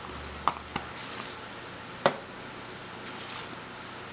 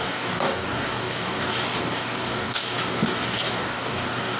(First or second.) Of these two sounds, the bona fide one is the first